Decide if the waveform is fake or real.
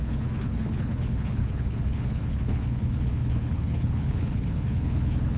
fake